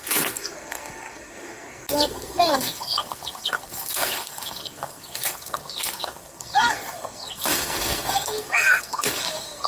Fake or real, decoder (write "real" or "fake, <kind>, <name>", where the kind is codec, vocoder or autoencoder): fake, codec, SNAC